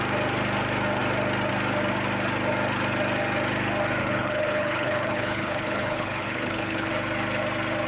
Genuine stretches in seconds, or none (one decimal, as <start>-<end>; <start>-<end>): 0.0-4.0; 6.9-7.9